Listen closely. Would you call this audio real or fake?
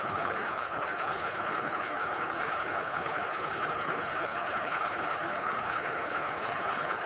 fake